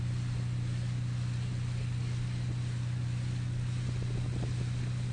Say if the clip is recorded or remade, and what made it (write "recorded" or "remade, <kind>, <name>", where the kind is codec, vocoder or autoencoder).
recorded